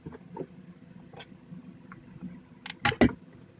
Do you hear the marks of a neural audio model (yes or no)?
no